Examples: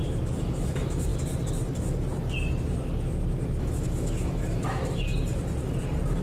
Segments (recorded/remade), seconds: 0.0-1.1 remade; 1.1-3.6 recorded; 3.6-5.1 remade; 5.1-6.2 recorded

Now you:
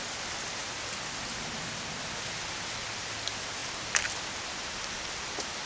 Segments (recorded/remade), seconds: 0.0-3.6 recorded; 3.6-5.7 remade

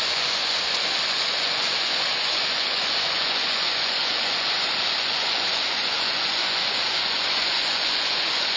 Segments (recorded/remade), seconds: 0.0-8.6 remade

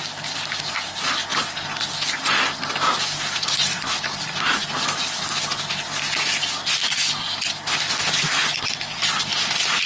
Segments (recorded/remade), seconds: 0.0-6.8 recorded; 6.8-7.4 remade; 7.4-9.9 recorded

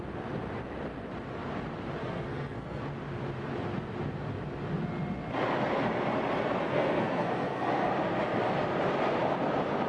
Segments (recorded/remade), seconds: 0.0-2.0 recorded; 2.0-2.8 remade; 2.8-6.6 recorded; 6.6-7.9 remade; 7.9-9.9 recorded

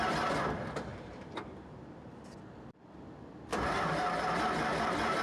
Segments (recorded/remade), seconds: 0.0-0.9 recorded; 0.9-2.1 remade; 2.1-3.5 recorded; 3.5-4.4 remade; 4.4-5.2 recorded

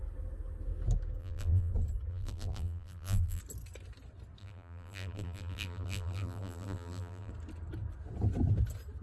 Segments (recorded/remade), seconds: 0.0-1.2 recorded; 1.2-1.7 remade; 1.7-2.1 recorded; 2.1-3.4 remade; 3.4-4.4 recorded; 4.4-7.3 remade; 7.3-9.0 recorded

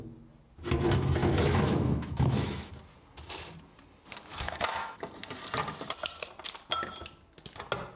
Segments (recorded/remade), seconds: 0.0-1.2 recorded; 1.2-2.7 remade; 2.7-4.3 recorded; 4.3-5.1 remade; 5.1-8.0 recorded